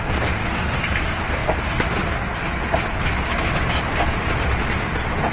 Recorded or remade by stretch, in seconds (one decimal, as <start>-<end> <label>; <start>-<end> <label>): 0.0-5.3 recorded